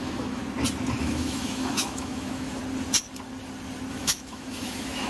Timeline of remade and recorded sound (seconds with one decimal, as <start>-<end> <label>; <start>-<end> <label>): 0.0-0.4 remade; 0.4-1.0 recorded; 1.0-2.6 remade; 2.6-3.9 recorded; 3.9-5.1 remade